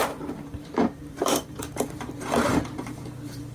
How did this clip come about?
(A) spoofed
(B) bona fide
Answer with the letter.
A